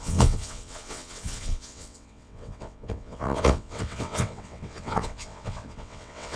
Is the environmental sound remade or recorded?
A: remade